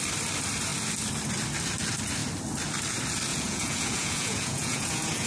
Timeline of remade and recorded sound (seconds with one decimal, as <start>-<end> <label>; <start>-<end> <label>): 0.0-3.3 recorded; 3.3-5.3 remade